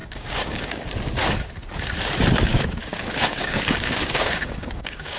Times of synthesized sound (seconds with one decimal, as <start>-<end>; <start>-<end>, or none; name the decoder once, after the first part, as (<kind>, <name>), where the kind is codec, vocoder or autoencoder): 0.0-0.9 (codec, DAC); 2.5-5.2